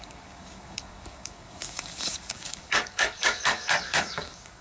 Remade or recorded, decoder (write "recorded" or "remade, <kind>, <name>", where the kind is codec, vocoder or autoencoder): remade, codec, DAC